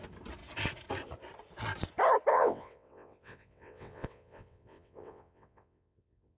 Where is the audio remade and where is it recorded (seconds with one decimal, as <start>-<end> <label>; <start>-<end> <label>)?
0.0-2.3 recorded; 2.3-6.4 remade